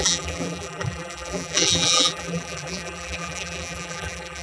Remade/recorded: remade